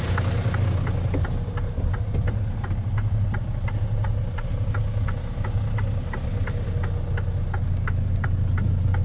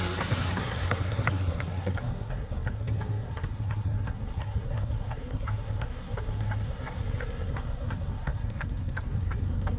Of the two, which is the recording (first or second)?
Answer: first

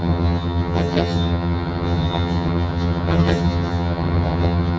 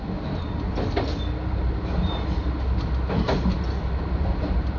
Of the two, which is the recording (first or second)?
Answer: second